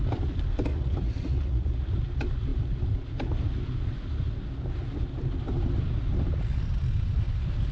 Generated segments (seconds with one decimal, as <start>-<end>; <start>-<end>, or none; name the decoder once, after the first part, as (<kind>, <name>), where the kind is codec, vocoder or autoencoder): 0.7-1.9 (vocoder, Vocos)